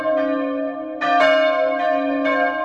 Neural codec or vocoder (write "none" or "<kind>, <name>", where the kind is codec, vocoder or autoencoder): none